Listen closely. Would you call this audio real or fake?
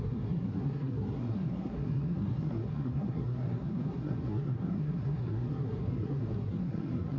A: fake